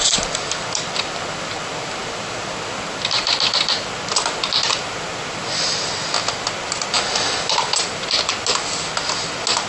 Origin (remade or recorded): recorded